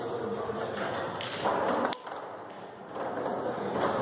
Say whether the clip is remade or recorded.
recorded